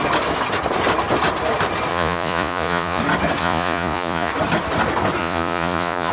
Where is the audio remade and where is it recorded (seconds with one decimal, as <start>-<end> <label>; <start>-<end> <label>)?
0.0-1.9 recorded; 1.9-3.0 remade; 3.0-3.4 recorded; 3.4-4.3 remade; 4.3-5.2 recorded; 5.2-6.1 remade